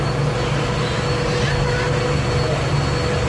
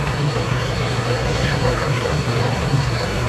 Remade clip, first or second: second